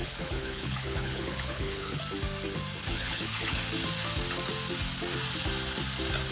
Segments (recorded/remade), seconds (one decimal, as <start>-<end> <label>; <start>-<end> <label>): 0.0-2.0 remade; 2.0-2.9 recorded; 2.9-3.6 remade; 3.6-6.3 recorded